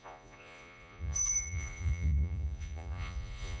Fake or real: fake